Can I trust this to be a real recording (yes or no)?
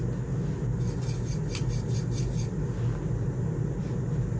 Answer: yes